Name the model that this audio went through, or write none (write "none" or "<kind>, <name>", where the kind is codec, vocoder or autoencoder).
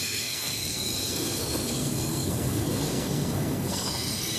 codec, SNAC